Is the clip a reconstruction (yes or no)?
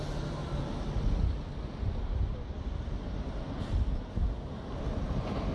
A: no